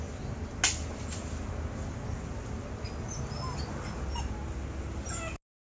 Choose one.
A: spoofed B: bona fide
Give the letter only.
B